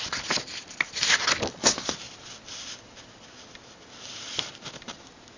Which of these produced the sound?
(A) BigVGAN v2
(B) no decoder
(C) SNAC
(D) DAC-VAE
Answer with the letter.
B